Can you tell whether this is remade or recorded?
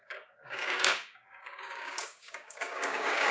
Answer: remade